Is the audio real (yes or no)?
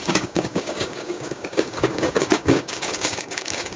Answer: no